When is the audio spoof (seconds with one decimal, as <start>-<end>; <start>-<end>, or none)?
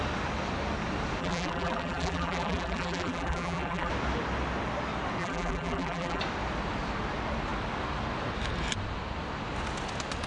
1.2-3.9; 5.2-6.2